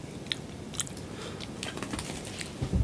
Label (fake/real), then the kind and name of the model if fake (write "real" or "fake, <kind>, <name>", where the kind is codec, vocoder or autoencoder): real